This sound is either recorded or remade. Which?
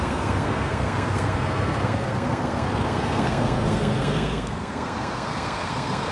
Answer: remade